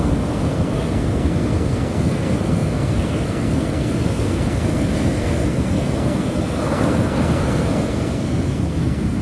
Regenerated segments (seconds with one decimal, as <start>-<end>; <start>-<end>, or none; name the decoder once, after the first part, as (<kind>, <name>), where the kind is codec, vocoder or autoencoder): 0.0-9.2 (codec, SNAC)